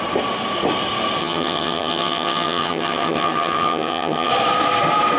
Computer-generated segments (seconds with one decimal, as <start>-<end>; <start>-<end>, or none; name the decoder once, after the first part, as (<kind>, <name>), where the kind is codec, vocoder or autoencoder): 1.2-4.3 (vocoder, HiFi-GAN)